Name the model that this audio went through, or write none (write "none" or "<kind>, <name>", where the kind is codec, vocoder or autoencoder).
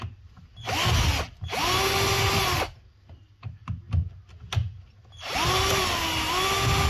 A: none